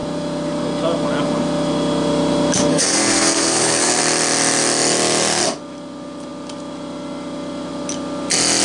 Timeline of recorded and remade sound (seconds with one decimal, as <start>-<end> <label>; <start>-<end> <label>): 0.0-2.7 recorded; 2.7-4.0 remade; 4.0-8.6 recorded